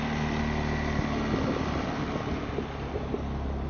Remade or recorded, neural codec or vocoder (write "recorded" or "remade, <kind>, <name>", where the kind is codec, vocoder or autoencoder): recorded